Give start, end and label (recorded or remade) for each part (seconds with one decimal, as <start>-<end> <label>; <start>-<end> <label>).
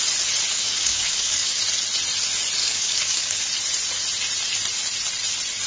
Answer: 0.0-0.5 recorded; 0.5-1.6 remade; 1.6-2.6 recorded; 2.6-3.4 remade; 3.4-5.7 recorded